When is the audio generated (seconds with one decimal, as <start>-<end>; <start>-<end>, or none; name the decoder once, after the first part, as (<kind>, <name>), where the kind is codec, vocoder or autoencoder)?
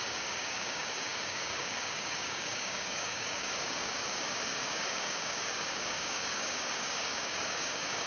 0.0-8.1 (codec, DAC)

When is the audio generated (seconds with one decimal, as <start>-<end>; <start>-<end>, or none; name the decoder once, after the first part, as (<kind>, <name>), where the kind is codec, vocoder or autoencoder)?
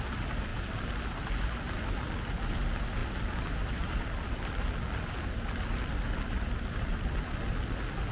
none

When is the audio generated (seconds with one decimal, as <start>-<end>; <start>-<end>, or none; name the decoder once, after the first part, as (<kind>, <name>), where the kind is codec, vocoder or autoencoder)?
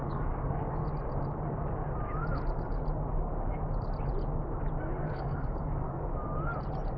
0.0-0.8 (codec, DAC); 5.0-6.2